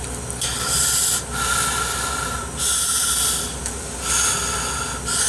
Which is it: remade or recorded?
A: recorded